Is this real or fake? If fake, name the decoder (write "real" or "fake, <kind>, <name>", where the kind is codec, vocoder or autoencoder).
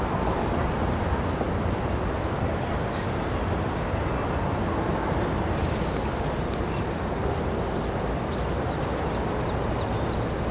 real